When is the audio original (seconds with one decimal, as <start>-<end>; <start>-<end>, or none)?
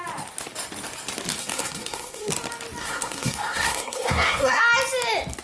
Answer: 0.0-1.4; 2.3-2.8; 4.6-5.4